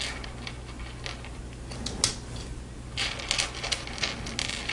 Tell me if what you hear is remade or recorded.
recorded